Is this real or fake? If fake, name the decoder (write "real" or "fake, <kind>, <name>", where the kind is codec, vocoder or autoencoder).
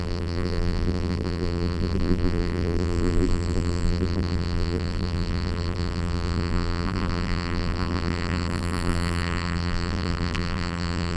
fake, vocoder, BigVGAN v2